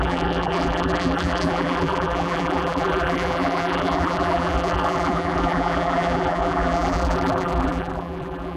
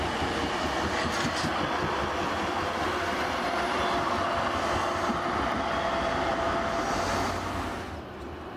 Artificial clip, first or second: first